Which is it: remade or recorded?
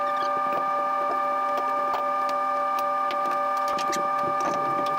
recorded